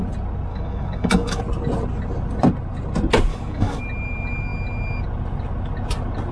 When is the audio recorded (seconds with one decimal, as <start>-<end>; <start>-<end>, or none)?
0.0-0.5; 1.4-3.3; 3.8-6.3